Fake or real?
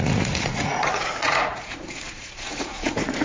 fake